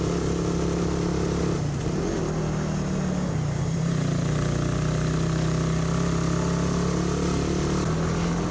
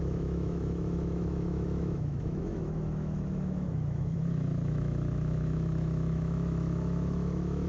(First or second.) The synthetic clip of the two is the second